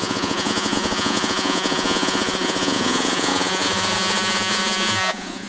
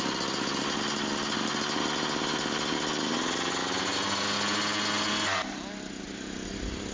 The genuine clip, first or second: second